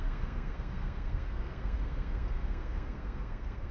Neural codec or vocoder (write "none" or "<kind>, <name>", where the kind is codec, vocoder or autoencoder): codec, SNAC